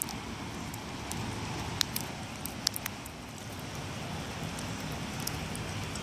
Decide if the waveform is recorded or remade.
recorded